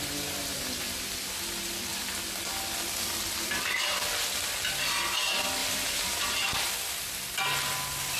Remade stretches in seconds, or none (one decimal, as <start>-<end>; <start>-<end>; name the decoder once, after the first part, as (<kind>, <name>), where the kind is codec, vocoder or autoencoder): 5.6-6.5 (vocoder, BigVGAN v2)